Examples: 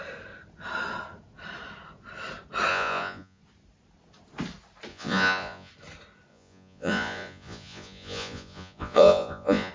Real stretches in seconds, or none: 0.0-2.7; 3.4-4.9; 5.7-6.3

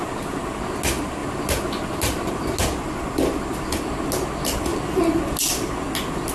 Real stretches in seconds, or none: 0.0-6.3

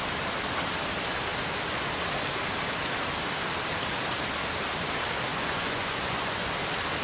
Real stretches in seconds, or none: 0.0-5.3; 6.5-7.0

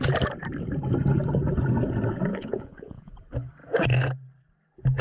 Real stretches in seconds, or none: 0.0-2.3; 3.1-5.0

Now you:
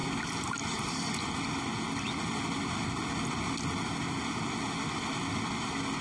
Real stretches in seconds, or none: 0.0-6.0

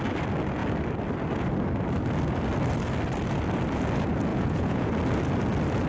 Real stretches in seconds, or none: 0.0-4.3; 4.9-5.9